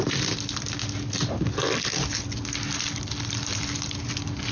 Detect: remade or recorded recorded